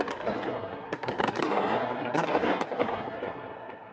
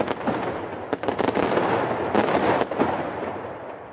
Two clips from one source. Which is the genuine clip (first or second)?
second